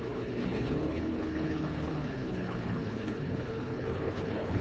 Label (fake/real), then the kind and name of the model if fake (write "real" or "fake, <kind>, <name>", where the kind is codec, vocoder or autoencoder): fake, codec, HILCodec